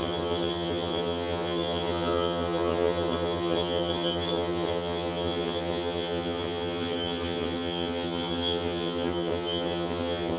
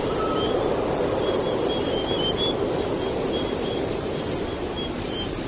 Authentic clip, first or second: second